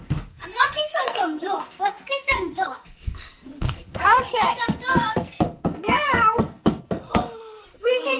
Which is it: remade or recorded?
remade